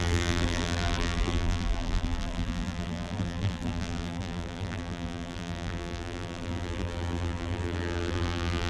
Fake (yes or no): yes